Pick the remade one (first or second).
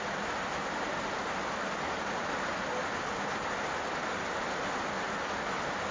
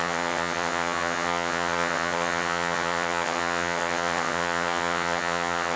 second